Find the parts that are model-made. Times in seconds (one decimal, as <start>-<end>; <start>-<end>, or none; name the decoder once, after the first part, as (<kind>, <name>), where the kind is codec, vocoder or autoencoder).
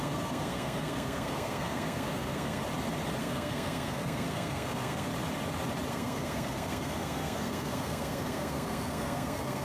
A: 0.0-2.6 (codec, SNAC); 3.2-5.1; 5.9-9.6